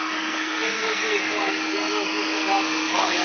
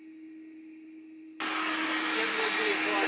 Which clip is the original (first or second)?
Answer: second